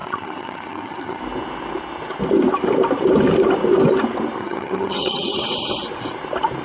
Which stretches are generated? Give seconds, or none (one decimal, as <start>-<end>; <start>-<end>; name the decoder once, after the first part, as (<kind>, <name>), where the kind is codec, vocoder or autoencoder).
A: 0.0-1.2 (vocoder, HiFi-GAN); 4.4-5.4